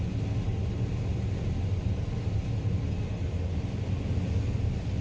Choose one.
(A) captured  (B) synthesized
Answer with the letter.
A